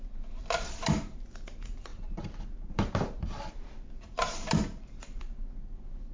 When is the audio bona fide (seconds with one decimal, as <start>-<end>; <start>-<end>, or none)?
0.0-0.4; 1.2-1.9; 5.2-6.1